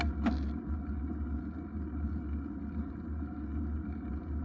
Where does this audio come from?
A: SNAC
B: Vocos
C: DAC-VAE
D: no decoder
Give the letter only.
D